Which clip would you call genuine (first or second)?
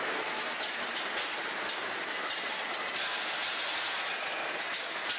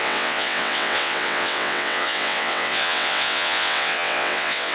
first